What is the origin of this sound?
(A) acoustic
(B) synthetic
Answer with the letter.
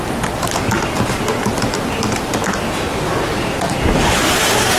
A